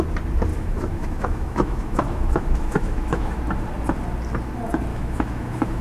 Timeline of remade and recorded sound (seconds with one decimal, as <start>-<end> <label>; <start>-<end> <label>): 0.0-0.5 recorded; 0.5-3.4 remade; 3.4-4.9 recorded; 4.9-5.8 remade